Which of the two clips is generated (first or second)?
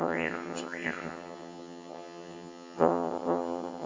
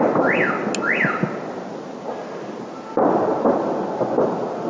first